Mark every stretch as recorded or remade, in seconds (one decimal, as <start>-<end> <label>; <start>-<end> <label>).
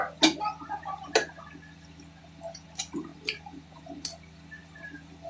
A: 0.0-3.1 recorded; 3.1-4.0 remade; 4.0-4.6 recorded; 4.6-5.3 remade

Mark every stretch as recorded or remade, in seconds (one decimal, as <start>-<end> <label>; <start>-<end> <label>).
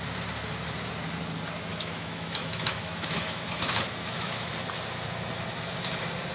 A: 0.0-1.7 recorded; 1.7-4.5 remade; 4.5-6.3 recorded